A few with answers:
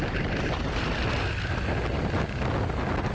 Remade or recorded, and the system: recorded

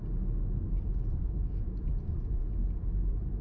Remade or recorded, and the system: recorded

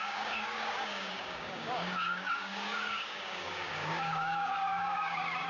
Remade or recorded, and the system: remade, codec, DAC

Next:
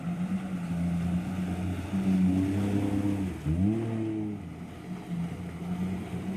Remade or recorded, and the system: recorded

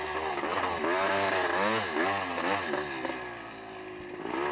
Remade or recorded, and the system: recorded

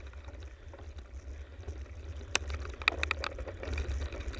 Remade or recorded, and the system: recorded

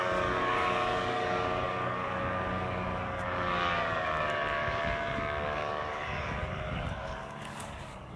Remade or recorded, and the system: remade, codec, DAC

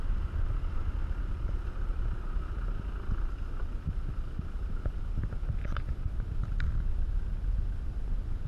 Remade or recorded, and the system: recorded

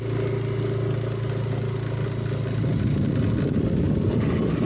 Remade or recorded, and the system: recorded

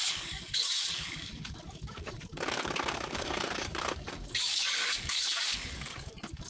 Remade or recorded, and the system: remade, codec, DAC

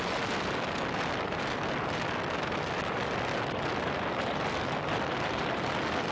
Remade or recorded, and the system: recorded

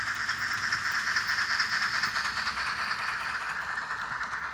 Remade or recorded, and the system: recorded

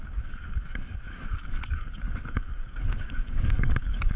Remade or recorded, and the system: remade, codec, DAC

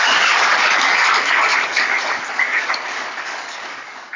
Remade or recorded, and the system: remade, codec, DAC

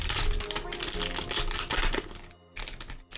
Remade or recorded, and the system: recorded